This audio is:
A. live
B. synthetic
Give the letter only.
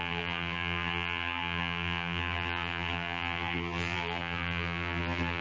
B